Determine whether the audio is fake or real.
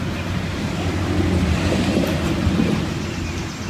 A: real